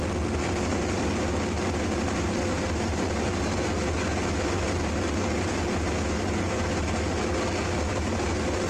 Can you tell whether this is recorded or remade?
recorded